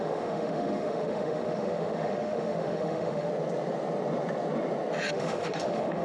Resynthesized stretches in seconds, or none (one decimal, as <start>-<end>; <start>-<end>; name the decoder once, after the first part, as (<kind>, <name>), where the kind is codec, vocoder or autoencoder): 0.0-3.3 (autoencoder, DAC-VAE); 5.1-6.0